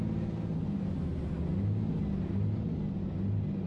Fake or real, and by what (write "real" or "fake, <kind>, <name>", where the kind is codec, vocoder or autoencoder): real